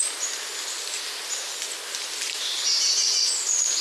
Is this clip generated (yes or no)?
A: no